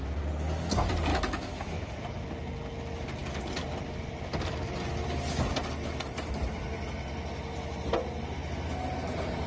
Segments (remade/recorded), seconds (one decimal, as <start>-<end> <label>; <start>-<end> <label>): 0.0-1.1 recorded; 1.1-2.0 remade; 2.0-9.5 recorded